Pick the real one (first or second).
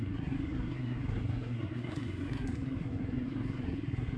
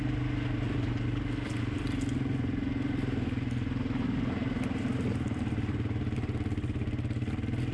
second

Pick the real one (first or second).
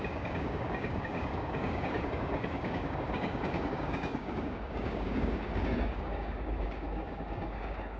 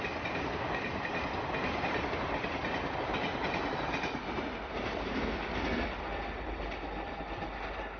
second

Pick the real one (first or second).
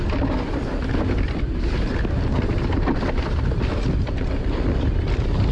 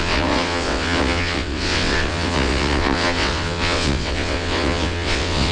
first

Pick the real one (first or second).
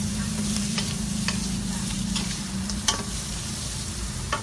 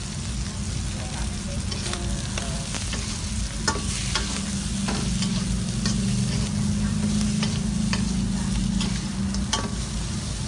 second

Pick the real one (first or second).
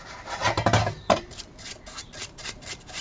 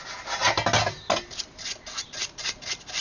second